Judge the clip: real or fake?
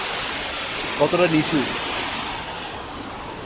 real